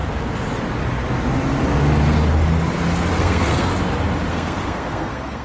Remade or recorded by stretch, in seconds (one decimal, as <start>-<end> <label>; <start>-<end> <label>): 0.0-3.2 recorded; 3.2-3.7 remade; 3.7-4.3 recorded; 4.3-5.4 remade